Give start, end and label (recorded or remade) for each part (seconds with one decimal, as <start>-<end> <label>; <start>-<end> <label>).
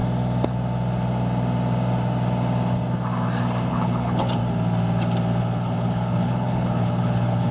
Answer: 0.0-3.7 recorded; 3.7-4.4 remade; 4.4-5.4 recorded; 5.4-7.5 remade